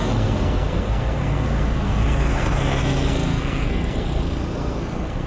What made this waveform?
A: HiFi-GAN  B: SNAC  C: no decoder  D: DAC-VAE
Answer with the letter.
B